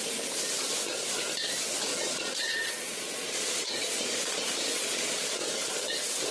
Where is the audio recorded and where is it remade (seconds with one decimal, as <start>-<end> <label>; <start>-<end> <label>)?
0.0-1.9 recorded; 1.9-5.7 remade; 5.7-6.3 recorded